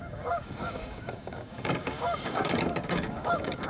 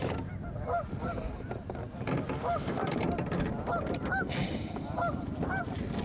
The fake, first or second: first